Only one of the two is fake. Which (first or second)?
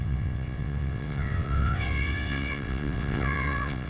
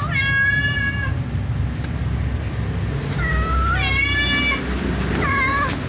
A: first